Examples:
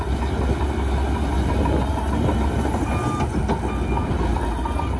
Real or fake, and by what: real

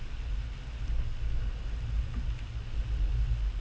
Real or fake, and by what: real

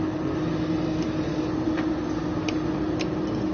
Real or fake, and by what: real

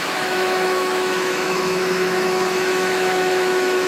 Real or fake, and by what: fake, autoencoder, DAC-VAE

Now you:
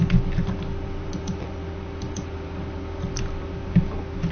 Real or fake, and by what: real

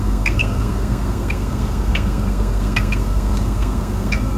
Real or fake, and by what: fake, codec, SNAC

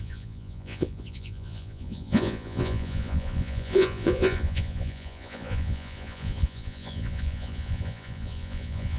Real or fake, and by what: fake, vocoder, Vocos